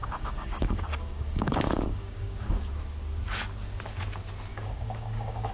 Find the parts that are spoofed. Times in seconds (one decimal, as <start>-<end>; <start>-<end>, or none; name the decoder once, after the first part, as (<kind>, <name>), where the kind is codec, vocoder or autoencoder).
0.0-2.7 (codec, DAC); 4.5-5.5